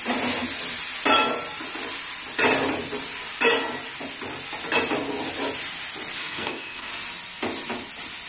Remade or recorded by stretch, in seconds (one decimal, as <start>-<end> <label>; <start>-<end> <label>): 0.0-6.2 recorded; 6.2-6.9 remade; 6.9-8.3 recorded